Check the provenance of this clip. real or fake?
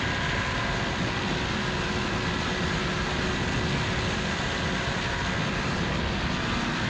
real